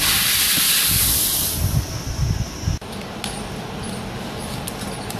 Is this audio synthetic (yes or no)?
no